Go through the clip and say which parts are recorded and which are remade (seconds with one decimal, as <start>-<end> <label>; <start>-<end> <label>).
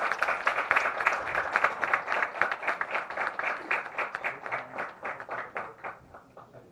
0.0-0.5 recorded; 0.5-1.2 remade; 1.2-6.7 recorded